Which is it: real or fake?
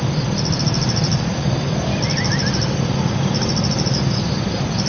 real